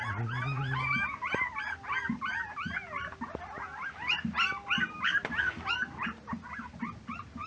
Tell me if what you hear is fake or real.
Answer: real